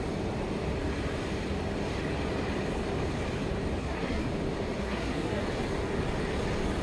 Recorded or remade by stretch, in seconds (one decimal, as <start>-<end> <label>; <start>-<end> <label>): 0.0-3.8 recorded; 3.8-4.3 remade; 4.3-4.8 recorded; 4.8-5.4 remade; 5.4-6.8 recorded